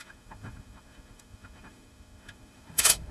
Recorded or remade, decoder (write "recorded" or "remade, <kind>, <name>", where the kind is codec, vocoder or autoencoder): remade, autoencoder, DAC-VAE